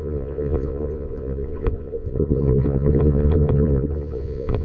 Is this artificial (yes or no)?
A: yes